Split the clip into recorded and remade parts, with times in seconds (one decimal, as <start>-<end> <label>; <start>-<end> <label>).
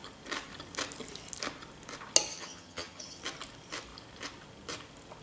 0.0-2.3 recorded; 2.3-3.2 remade; 3.2-5.2 recorded